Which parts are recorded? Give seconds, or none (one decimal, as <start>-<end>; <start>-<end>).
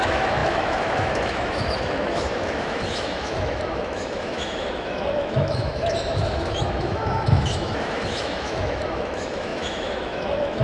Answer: none